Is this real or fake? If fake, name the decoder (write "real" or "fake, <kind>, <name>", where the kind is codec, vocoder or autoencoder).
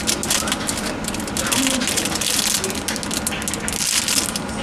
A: real